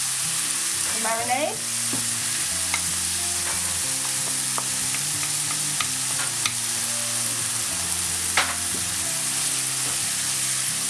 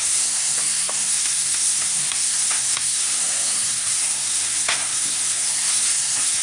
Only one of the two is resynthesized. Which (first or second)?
second